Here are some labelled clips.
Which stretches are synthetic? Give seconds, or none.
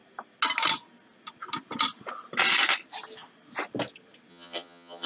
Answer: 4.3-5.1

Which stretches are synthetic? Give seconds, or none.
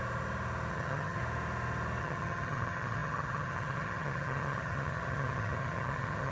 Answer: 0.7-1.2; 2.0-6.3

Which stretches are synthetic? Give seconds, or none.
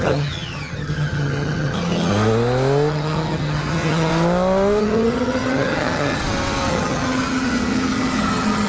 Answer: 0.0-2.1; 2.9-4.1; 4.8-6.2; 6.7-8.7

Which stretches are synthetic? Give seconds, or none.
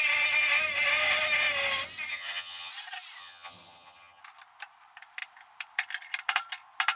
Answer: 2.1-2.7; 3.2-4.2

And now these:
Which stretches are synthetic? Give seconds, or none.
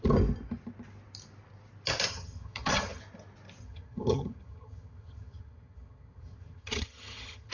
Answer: 2.1-3.0; 3.6-7.5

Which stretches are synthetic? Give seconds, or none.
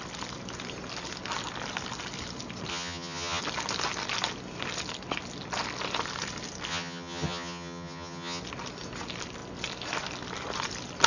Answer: 2.7-3.4; 6.7-8.4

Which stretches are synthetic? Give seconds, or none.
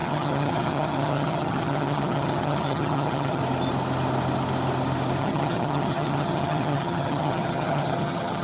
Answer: 0.0-3.4; 5.2-8.4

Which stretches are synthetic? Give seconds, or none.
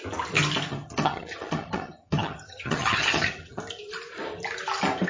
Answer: 0.7-3.6